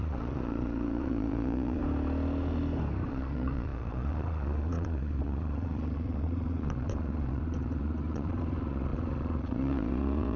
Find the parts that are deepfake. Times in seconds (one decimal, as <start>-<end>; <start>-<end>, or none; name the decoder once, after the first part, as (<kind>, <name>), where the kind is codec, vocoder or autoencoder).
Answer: 0.0-1.8 (vocoder, Vocos); 3.1-10.4